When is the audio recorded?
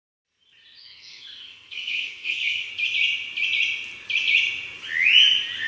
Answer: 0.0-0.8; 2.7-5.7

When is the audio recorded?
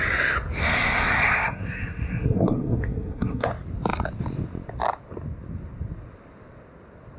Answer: 0.0-0.6; 3.5-7.2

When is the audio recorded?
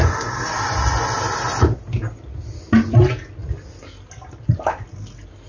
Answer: 0.0-5.5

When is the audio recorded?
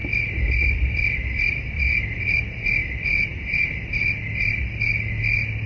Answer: 0.0-5.7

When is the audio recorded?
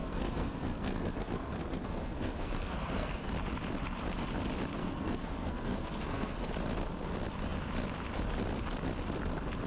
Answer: 3.3-4.8; 6.5-9.7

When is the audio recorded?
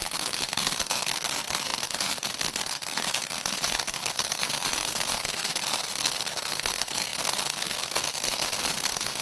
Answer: none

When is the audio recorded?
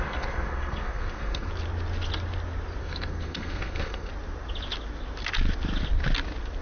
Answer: 1.5-2.8; 4.1-6.6